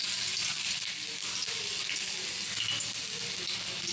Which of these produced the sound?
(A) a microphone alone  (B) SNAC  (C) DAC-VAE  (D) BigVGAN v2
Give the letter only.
A